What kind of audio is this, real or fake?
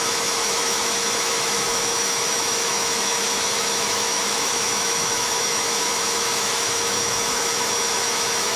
fake